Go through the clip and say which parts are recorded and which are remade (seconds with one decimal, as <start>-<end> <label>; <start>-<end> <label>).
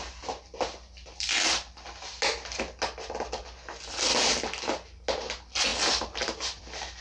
0.0-7.0 recorded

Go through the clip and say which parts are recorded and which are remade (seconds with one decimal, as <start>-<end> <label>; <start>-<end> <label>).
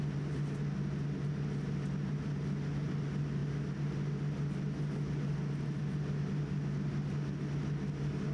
0.0-8.3 recorded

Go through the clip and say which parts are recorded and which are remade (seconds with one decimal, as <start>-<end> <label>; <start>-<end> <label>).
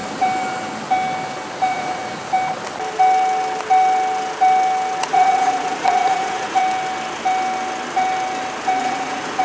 0.0-1.7 recorded; 1.7-2.2 remade; 2.2-5.0 recorded; 5.0-6.6 remade; 6.6-8.8 recorded; 8.8-9.4 remade